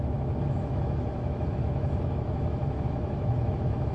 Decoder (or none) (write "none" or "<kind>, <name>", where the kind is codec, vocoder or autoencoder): autoencoder, DAC-VAE